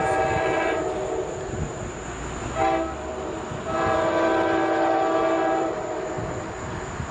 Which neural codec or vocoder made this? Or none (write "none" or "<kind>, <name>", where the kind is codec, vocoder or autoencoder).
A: none